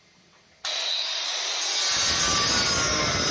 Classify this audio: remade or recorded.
recorded